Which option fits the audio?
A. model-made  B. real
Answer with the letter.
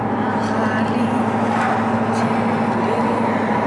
B